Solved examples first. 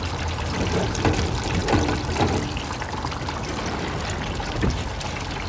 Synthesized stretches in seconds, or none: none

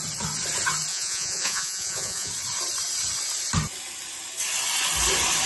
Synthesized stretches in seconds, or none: 0.9-2.3 (vocoder, Vocos)

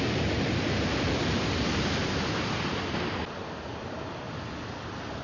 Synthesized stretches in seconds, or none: 3.4-4.3 (vocoder, BigVGAN v2)

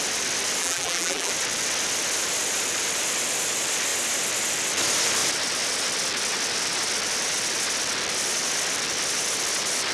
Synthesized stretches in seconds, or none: 0.6-1.3 (vocoder, BigVGAN v2)